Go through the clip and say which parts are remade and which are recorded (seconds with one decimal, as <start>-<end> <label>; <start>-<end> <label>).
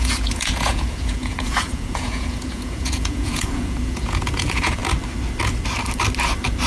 0.0-4.8 remade; 4.8-6.7 recorded